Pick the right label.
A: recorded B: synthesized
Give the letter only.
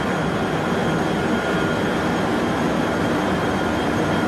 A